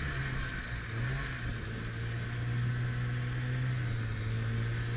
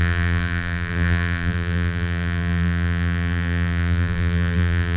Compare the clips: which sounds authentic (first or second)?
first